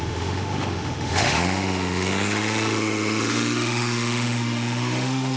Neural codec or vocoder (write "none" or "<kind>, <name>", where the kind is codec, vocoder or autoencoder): autoencoder, DAC-VAE